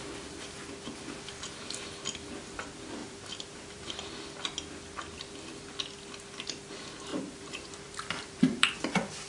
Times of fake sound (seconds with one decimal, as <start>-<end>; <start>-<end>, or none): 3.0-3.9; 7.1-9.3